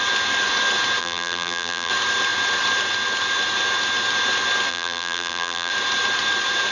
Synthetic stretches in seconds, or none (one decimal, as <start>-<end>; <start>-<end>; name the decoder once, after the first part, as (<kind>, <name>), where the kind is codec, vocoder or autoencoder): 1.0-1.9 (vocoder, BigVGAN v2); 4.7-5.7